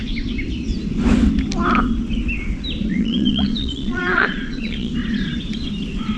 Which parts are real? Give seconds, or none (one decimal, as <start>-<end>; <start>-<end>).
0.0-2.9; 4.9-6.2